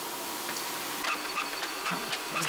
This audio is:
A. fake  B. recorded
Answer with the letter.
A